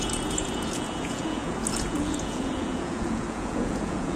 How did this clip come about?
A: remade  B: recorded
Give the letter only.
A